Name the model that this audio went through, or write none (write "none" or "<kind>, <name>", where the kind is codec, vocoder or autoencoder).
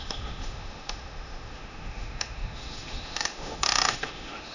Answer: autoencoder, DAC-VAE